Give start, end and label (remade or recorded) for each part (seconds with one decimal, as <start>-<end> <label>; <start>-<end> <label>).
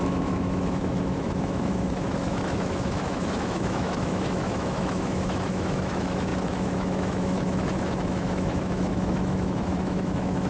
0.0-10.5 remade